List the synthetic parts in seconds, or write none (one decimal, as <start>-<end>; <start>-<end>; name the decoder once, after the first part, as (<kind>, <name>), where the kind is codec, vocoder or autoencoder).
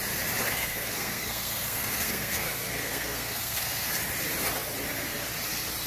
0.4-3.9 (codec, SNAC)